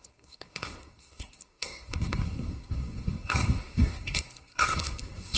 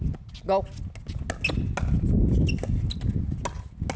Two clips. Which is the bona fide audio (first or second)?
second